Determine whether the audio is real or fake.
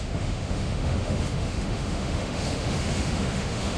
fake